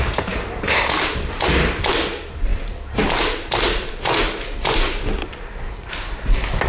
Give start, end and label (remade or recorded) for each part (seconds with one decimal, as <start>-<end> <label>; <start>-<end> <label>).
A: 0.0-6.7 recorded